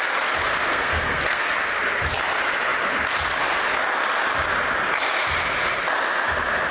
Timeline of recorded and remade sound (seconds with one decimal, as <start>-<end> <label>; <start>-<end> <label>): 0.0-0.7 recorded; 0.7-1.5 remade; 1.5-6.7 recorded